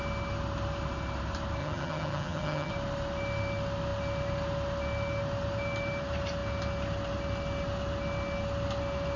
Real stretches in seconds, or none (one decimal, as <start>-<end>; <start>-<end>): 0.0-1.6; 2.7-9.2

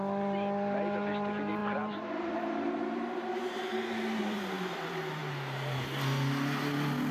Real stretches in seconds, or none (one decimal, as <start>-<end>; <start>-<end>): 5.2-7.1

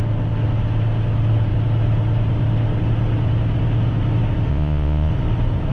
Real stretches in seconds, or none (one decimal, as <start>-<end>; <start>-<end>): 0.0-4.5; 5.1-5.7

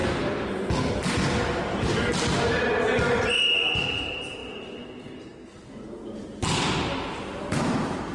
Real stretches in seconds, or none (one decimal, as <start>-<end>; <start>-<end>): 0.0-8.1

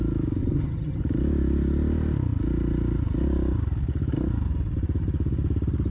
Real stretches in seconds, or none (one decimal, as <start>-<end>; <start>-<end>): 0.0-0.4; 1.0-5.9

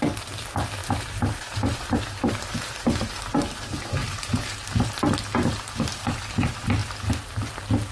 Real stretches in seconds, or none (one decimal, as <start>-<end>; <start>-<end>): 0.0-0.8; 2.0-4.0; 5.1-7.9

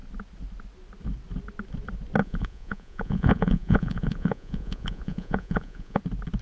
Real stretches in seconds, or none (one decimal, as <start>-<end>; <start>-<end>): 0.0-2.2; 6.0-6.4

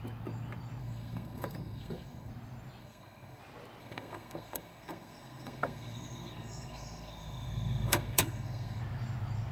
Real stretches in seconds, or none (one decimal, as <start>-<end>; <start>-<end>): 0.0-0.8; 2.3-2.8; 3.4-3.8; 8.8-9.5